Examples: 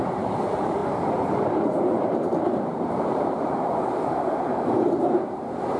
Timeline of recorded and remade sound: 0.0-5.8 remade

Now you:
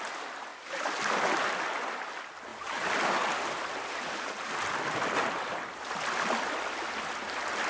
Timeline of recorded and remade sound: 0.0-0.5 recorded; 0.5-2.0 remade; 2.0-7.7 recorded